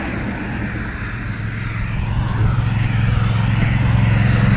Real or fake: real